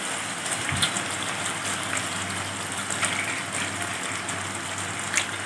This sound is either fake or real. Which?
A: real